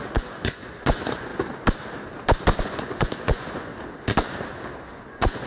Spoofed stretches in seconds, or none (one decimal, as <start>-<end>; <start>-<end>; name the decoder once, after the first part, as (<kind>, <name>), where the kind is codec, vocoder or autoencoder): 0.0-1.3 (vocoder, Vocos); 2.6-3.7; 5.1-5.5